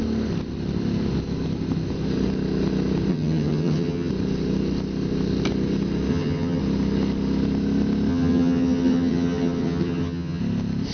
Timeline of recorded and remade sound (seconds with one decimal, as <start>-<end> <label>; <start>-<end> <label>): 0.0-3.1 recorded; 3.1-4.1 remade; 4.1-6.1 recorded; 6.1-6.6 remade; 6.6-8.1 recorded; 8.1-10.4 remade; 10.4-10.9 recorded